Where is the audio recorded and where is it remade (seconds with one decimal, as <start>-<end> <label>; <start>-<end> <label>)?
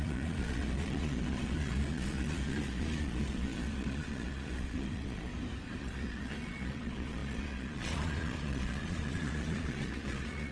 0.0-5.3 remade; 5.3-5.8 recorded; 5.8-10.5 remade